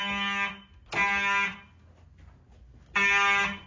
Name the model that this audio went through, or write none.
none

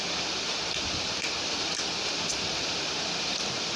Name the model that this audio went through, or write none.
none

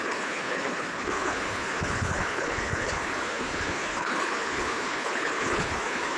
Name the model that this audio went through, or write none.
codec, HILCodec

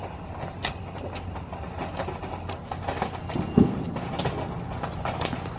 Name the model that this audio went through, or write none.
none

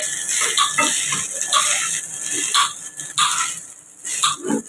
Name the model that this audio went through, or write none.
none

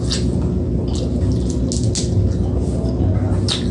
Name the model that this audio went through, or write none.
none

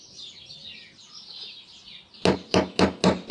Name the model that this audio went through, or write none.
none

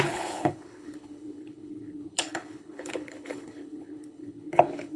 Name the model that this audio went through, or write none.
codec, HILCodec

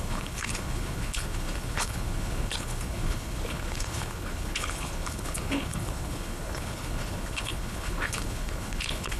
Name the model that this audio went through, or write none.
codec, HILCodec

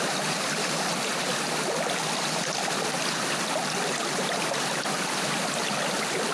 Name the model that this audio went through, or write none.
none